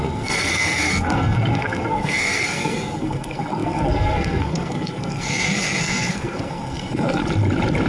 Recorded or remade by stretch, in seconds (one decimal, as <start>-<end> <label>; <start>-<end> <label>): 0.0-7.2 remade; 7.2-7.9 recorded